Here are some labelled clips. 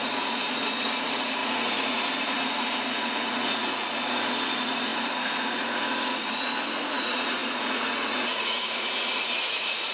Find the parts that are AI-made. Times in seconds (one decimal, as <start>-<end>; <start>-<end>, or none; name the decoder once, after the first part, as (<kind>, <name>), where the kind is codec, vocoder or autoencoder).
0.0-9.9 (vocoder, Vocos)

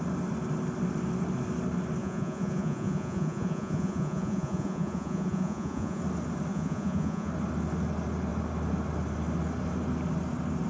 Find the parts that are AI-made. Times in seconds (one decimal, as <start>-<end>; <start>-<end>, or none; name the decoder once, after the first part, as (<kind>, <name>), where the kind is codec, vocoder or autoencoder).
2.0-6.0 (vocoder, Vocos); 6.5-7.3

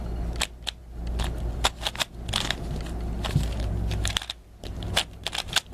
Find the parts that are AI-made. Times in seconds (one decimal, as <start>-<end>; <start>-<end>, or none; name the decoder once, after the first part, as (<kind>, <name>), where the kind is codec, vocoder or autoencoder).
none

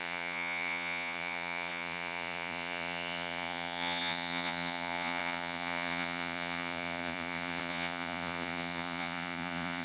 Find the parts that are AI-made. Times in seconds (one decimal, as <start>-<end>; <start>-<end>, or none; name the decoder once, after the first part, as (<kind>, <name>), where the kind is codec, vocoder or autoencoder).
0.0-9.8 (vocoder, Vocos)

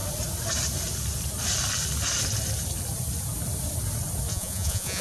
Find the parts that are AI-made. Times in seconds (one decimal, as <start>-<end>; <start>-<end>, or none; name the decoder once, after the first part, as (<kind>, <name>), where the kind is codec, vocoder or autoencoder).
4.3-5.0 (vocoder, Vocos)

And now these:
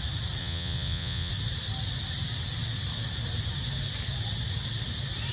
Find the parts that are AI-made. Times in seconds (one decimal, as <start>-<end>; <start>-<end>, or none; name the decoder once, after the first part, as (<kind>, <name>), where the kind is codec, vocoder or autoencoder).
0.4-1.3 (vocoder, Vocos)

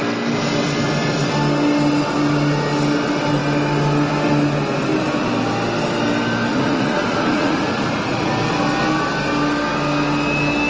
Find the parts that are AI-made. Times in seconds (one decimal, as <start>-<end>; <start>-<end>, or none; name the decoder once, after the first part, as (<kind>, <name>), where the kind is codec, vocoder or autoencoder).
6.5-8.3 (vocoder, Vocos)

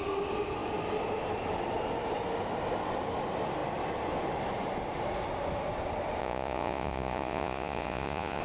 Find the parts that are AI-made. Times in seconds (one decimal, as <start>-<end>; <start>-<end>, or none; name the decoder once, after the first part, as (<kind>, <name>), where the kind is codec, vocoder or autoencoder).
6.2-8.4 (vocoder, Vocos)